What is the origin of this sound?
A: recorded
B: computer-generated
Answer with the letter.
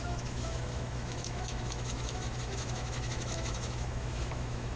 B